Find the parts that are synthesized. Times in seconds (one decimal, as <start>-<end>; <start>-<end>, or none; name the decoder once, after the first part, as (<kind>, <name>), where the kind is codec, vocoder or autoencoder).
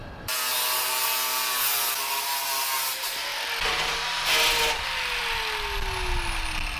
none